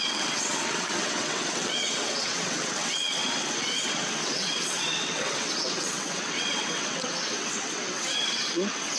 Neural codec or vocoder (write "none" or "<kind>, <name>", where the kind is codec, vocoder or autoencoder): vocoder, WaveNeXt